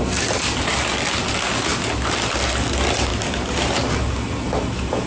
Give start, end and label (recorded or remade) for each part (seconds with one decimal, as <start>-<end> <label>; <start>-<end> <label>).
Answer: 0.0-5.1 recorded